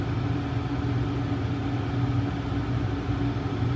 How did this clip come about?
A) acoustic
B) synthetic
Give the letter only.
A